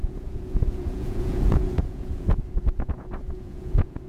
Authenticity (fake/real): fake